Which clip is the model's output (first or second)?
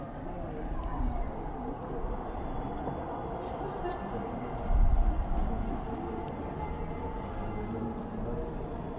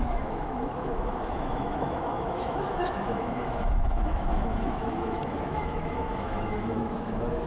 second